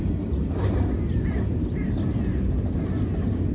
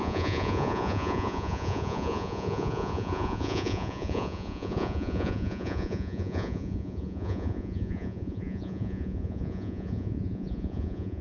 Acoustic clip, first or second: first